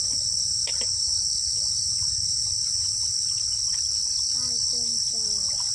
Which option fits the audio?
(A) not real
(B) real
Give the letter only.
B